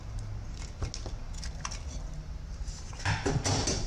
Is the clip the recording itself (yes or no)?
yes